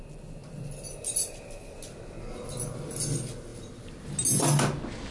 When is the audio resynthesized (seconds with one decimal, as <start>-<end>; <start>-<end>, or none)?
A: none

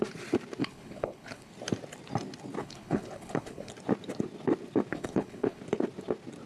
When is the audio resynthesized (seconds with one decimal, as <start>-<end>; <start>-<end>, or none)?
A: 0.6-1.5; 2.6-3.7; 4.9-5.6

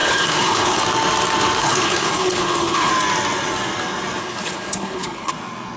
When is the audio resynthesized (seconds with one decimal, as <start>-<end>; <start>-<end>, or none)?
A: 0.0-0.8; 1.6-2.9; 4.2-5.3

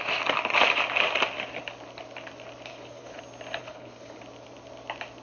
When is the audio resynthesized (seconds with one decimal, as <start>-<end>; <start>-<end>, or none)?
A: 2.7-3.2; 3.6-4.2